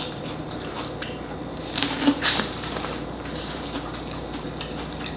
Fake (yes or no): yes